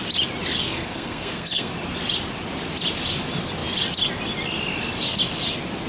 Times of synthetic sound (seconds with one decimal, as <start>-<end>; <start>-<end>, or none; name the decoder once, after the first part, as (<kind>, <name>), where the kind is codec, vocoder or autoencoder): 0.6-1.7 (codec, SNAC)